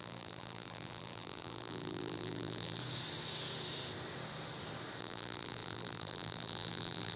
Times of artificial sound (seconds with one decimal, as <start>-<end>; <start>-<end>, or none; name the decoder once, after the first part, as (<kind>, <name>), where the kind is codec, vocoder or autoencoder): 0.0-2.8 (vocoder, BigVGAN v2); 5.0-7.2